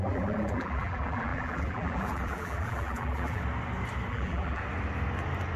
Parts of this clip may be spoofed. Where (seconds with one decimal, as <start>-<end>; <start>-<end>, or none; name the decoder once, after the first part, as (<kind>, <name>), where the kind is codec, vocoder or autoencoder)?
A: 0.0-3.4 (vocoder, BigVGAN v2); 4.1-4.6